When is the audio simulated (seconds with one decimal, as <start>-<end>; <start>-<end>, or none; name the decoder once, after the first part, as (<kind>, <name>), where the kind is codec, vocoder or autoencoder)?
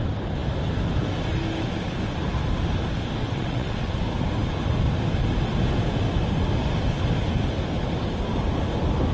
3.2-3.9 (vocoder, WaveNeXt)